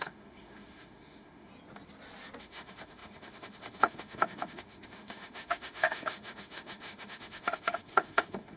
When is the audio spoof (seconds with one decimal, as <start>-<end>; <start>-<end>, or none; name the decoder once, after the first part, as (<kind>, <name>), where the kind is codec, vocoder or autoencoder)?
0.0-1.5 (autoencoder, DAC-VAE); 2.4-8.6